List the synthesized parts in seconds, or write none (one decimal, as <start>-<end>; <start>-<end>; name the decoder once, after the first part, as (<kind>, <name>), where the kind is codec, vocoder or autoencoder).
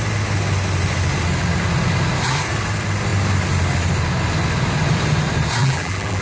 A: 5.6-6.2 (vocoder, BigVGAN v2)